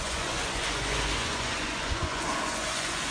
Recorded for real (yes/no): no